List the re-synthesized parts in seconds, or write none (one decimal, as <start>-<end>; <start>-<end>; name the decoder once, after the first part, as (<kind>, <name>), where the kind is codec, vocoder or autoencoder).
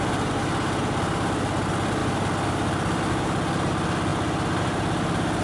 none